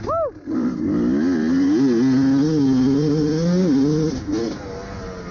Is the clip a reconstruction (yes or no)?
no